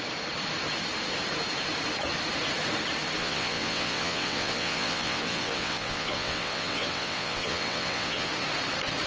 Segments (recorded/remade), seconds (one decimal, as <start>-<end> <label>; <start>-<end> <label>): 0.0-3.2 recorded; 3.2-8.3 remade; 8.3-9.1 recorded